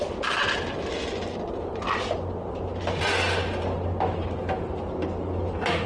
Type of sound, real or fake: real